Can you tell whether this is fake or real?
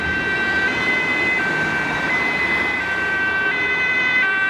real